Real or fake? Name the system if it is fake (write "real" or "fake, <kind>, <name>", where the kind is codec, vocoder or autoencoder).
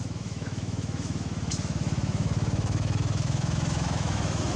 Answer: fake, autoencoder, DAC-VAE